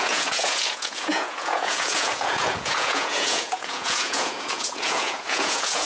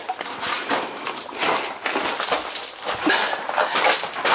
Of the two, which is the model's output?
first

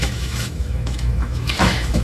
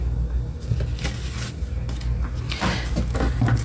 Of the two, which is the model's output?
first